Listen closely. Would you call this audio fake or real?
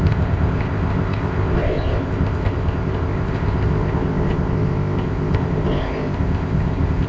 fake